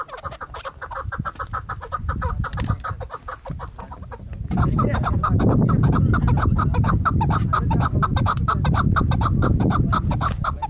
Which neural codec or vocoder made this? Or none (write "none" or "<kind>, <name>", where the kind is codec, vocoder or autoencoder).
none